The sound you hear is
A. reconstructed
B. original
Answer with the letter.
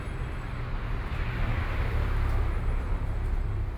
B